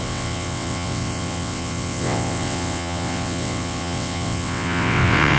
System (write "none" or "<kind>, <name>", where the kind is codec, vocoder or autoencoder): vocoder, WaveNeXt